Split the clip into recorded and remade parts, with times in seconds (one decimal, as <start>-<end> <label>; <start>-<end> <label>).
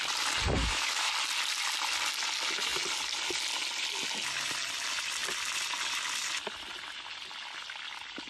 0.0-0.6 recorded; 0.6-1.1 remade; 1.1-8.3 recorded